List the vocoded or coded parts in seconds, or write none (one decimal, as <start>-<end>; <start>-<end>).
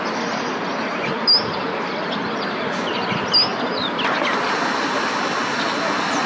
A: none